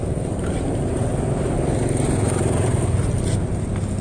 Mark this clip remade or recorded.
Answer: recorded